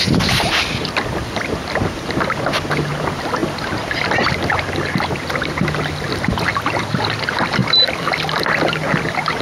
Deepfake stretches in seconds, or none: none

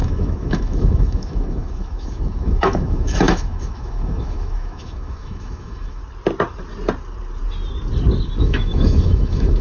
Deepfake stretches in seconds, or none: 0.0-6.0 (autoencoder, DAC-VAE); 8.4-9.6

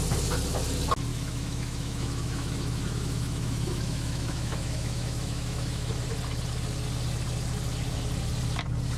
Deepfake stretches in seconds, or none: 1.1-6.0 (autoencoder, DAC-VAE)

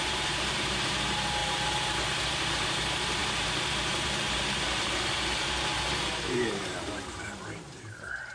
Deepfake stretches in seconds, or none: 0.0-8.3 (vocoder, BigVGAN v2)

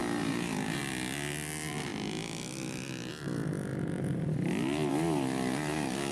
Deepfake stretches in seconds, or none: 0.0-0.8 (vocoder, BigVGAN v2)

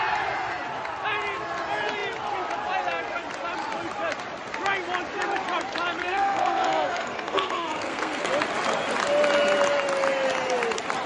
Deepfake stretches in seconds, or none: 6.0-8.3 (codec, SNAC)